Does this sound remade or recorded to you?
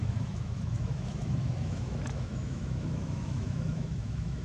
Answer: remade